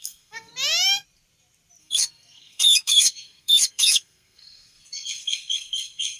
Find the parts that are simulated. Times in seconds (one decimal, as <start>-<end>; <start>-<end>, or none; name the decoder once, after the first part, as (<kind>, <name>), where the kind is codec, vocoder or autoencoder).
0.0-0.5 (codec, SNAC); 1.8-6.2